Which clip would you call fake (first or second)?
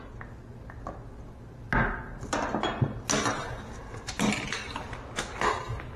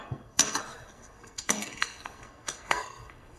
second